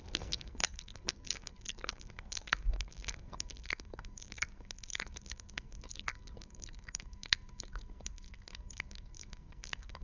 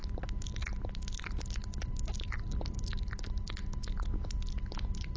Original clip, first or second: second